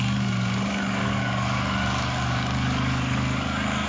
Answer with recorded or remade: remade